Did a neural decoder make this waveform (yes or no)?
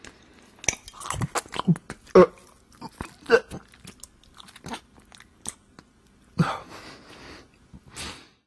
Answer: no